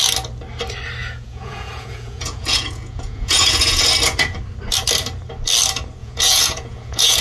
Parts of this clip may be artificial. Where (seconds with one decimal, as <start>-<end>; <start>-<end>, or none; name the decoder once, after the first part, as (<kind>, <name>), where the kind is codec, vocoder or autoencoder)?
1.0-3.9 (vocoder, Vocos); 6.0-7.2